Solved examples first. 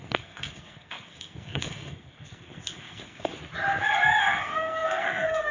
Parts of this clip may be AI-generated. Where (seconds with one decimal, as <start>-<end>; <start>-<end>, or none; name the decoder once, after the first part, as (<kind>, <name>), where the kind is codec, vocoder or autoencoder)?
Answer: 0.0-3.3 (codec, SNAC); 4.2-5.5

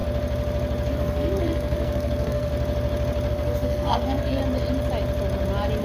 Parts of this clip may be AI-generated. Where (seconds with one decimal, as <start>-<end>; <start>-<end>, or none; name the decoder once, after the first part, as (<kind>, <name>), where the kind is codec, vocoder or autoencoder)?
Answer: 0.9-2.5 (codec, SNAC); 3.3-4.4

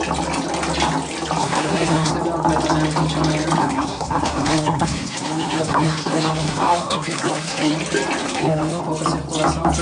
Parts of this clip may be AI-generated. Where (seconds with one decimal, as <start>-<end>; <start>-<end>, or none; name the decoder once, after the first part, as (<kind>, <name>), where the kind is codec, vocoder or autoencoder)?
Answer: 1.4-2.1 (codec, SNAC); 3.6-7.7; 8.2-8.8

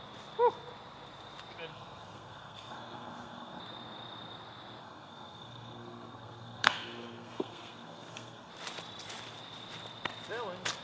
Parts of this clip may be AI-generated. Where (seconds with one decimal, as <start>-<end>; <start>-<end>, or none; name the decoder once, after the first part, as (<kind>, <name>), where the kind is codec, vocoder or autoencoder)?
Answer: 1.7-3.6 (codec, SNAC); 4.8-8.5

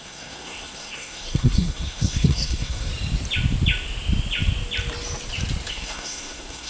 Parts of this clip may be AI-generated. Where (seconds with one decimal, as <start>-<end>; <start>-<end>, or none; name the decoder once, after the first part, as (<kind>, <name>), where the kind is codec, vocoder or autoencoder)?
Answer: 0.0-2.9 (codec, SNAC); 5.7-6.7